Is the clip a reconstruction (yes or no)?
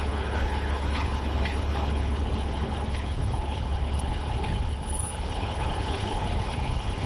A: yes